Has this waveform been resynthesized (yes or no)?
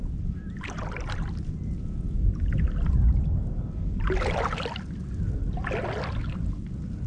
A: no